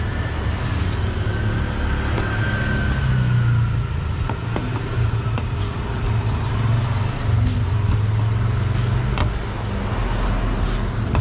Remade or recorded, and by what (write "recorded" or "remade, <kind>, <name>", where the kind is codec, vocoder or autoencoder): recorded